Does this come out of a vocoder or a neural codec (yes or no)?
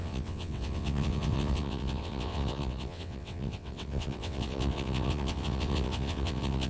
yes